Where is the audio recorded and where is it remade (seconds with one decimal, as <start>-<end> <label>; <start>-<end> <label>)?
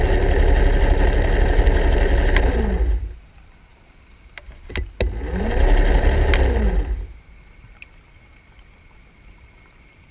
0.0-10.1 recorded